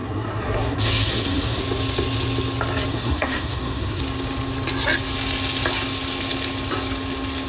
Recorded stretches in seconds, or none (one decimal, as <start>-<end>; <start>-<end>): 1.6-2.9; 4.0-7.5